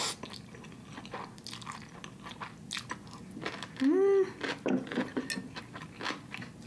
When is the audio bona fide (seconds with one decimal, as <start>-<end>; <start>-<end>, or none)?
0.0-6.7